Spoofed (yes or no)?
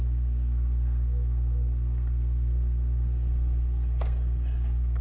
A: yes